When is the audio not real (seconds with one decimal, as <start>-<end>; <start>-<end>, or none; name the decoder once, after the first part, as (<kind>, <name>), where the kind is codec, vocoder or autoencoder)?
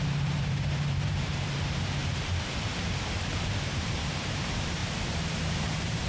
0.0-2.0 (vocoder, BigVGAN v2); 3.4-4.8; 5.4-6.1